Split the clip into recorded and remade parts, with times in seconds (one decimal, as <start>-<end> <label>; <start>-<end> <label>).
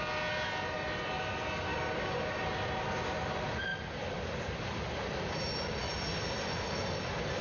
0.0-1.7 recorded; 1.7-2.4 remade; 2.4-7.4 recorded